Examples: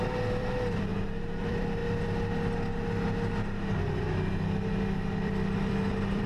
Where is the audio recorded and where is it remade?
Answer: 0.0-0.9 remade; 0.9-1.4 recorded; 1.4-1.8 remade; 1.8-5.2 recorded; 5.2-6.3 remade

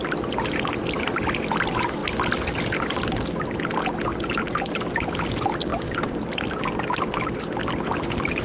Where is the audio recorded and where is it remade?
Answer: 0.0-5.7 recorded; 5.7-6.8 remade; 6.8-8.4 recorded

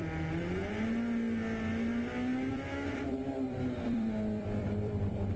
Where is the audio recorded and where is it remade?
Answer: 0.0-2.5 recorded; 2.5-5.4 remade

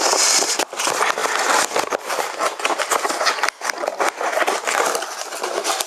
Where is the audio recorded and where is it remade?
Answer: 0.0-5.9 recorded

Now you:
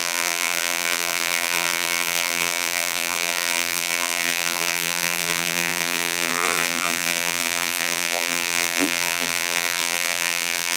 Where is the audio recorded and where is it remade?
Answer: 0.0-10.8 remade

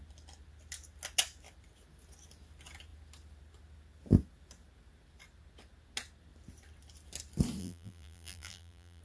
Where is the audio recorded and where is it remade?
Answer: 0.0-7.6 recorded; 7.6-9.0 remade

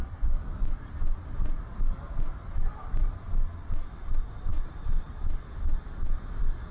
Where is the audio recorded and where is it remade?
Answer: 0.0-1.2 recorded; 1.2-3.4 remade; 3.4-4.5 recorded; 4.5-5.1 remade; 5.1-6.7 recorded